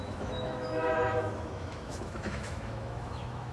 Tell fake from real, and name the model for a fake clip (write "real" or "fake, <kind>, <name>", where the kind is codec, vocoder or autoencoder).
fake, autoencoder, DAC-VAE